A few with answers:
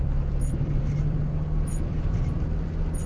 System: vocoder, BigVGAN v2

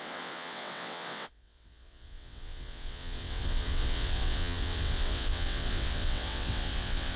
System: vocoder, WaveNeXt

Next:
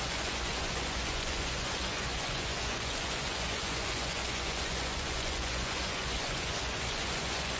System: vocoder, Vocos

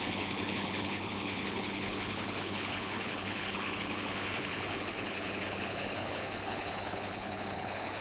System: codec, HILCodec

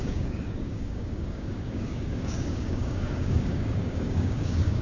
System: codec, DAC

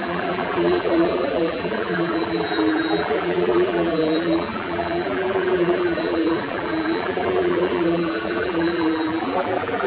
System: vocoder, BigVGAN v2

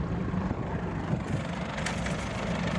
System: none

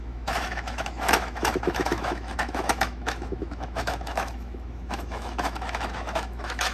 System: autoencoder, DAC-VAE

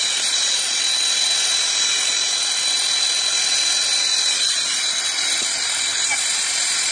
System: none